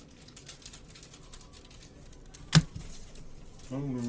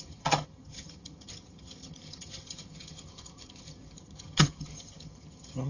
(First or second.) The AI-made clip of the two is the second